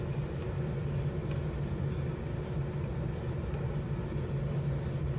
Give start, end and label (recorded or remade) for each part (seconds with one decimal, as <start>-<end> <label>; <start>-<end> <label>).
0.0-5.2 recorded